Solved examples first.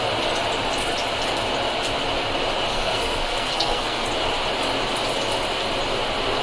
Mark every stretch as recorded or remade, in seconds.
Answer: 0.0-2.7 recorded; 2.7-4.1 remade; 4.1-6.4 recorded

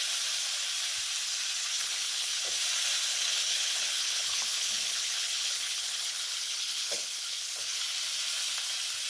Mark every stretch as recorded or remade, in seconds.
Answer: 0.0-1.8 recorded; 1.8-2.4 remade; 2.4-3.1 recorded; 3.1-7.8 remade; 7.8-9.1 recorded

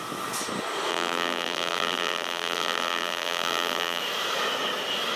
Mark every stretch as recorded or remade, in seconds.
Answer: 0.0-0.9 recorded; 0.9-4.0 remade; 4.0-5.2 recorded

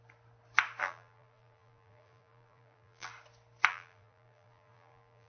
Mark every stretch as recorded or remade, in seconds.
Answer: 0.0-0.8 recorded; 0.8-3.1 remade; 3.1-3.7 recorded; 3.7-5.3 remade

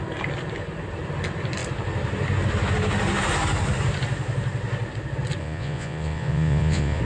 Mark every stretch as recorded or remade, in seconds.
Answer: 0.0-5.4 recorded; 5.4-7.0 remade

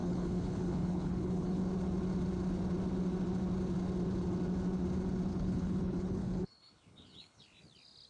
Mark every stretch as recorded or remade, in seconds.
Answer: 0.0-1.6 remade; 1.6-5.3 recorded; 5.3-7.4 remade; 7.4-8.1 recorded

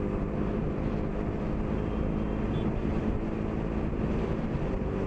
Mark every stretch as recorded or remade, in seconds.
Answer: 0.0-5.1 recorded

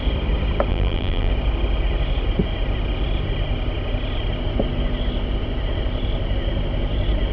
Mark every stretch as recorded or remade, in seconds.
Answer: 0.0-0.7 recorded; 0.7-1.3 remade; 1.3-7.3 recorded